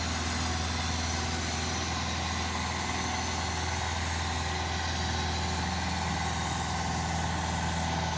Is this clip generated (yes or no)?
no